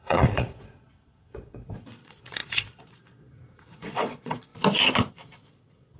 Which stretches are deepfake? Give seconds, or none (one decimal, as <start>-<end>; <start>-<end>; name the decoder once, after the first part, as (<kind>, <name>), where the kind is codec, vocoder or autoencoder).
0.0-4.5 (vocoder, Vocos); 5.1-6.0